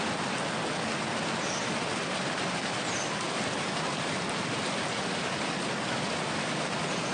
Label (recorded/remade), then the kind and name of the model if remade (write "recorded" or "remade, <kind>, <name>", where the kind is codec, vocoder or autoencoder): recorded